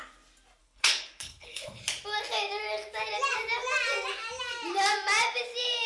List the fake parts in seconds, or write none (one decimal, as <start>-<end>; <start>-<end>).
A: 0.6-1.8